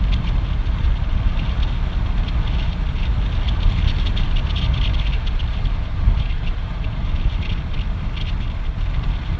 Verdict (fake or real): real